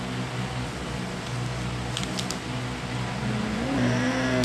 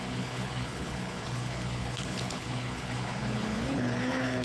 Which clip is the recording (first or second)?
first